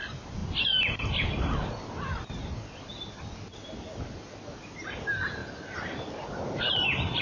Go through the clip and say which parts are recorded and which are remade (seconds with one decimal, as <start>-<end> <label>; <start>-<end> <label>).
0.0-7.2 recorded